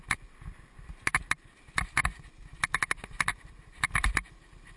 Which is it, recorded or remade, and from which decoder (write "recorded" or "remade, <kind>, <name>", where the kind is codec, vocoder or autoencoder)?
recorded